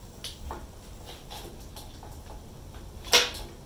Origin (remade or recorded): recorded